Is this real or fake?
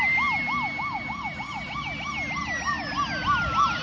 real